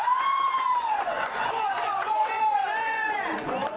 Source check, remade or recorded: remade